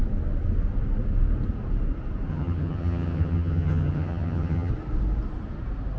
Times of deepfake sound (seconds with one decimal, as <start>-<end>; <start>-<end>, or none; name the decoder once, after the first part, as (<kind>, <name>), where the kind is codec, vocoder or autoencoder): 2.3-4.7 (vocoder, HiFi-GAN)

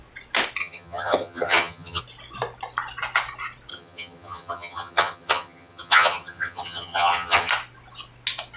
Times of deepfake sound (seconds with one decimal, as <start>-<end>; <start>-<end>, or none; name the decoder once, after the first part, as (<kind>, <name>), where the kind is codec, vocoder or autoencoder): 0.6-2.0 (vocoder, HiFi-GAN); 3.7-7.5

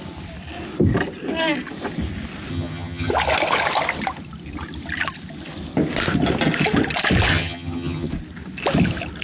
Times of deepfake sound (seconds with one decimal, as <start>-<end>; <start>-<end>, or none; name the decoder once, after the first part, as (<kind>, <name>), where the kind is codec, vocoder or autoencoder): 2.5-3.1 (vocoder, HiFi-GAN); 7.3-8.1

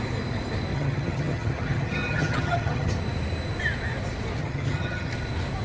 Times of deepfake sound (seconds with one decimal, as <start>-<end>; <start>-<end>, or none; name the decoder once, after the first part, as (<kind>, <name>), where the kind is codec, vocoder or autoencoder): 0.7-2.9 (vocoder, HiFi-GAN); 4.4-5.1

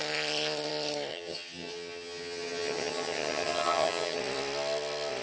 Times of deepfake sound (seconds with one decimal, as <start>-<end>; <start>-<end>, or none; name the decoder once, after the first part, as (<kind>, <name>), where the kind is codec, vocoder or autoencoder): 1.1-4.2 (vocoder, HiFi-GAN)